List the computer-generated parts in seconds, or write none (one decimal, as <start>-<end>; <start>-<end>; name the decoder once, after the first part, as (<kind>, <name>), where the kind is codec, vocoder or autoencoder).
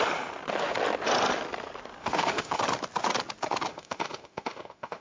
2.0-2.6 (autoencoder, DAC-VAE); 3.7-5.0